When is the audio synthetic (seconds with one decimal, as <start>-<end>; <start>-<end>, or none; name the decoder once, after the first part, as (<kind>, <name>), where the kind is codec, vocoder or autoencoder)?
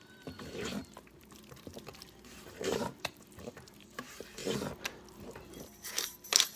0.0-4.4 (vocoder, BigVGAN v2); 5.1-6.6